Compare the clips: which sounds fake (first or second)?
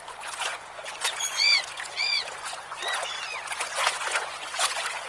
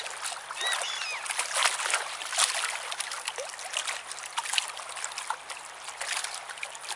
first